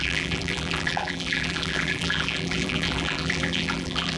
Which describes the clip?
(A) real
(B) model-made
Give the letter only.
B